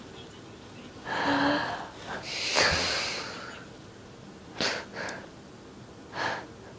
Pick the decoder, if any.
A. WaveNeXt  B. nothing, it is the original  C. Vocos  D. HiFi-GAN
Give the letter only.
B